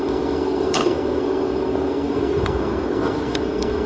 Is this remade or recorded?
remade